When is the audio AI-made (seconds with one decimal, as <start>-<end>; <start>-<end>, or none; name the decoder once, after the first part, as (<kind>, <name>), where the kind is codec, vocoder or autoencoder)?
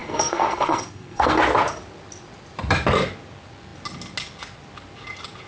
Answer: 0.0-1.4 (codec, SNAC)